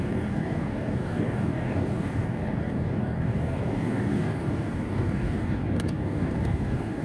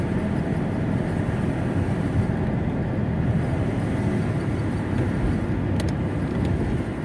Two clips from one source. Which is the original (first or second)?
second